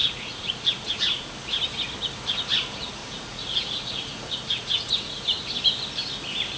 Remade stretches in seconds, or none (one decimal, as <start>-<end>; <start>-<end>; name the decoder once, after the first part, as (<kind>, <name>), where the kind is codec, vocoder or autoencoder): 0.0-1.3 (vocoder, Vocos); 3.0-5.5